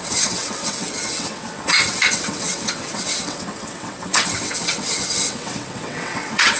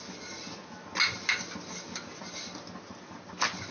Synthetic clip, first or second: first